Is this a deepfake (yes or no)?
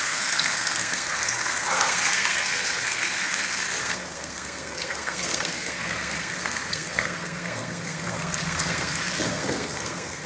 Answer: yes